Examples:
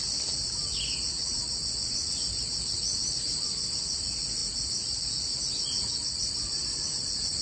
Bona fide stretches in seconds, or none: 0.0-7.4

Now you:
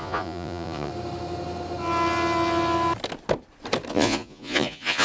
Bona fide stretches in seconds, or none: 0.9-3.9

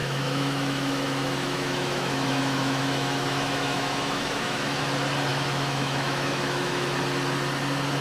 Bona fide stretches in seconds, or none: 4.8-5.3; 6.9-8.0

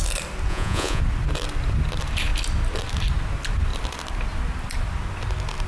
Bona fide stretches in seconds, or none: 0.0-0.5; 1.0-5.7